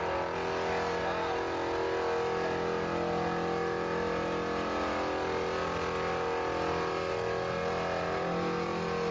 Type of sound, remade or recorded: recorded